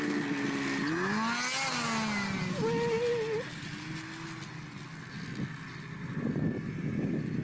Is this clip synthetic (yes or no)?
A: no